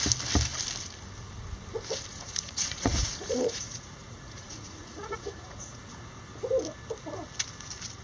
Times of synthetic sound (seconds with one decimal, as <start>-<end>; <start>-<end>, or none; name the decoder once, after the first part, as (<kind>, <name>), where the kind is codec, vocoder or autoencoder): 2.1-5.8 (vocoder, Vocos)